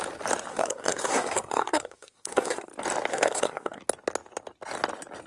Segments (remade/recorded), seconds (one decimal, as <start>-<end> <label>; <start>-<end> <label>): 0.0-0.5 recorded; 0.5-2.7 remade; 2.7-3.1 recorded; 3.1-3.8 remade; 3.8-5.3 recorded